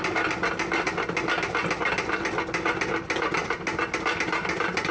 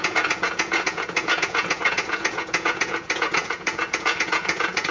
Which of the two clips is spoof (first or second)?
second